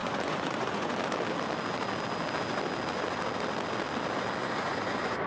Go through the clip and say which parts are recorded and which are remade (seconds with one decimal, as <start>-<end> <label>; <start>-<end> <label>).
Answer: 0.0-1.0 remade; 1.0-4.4 recorded; 4.4-5.3 remade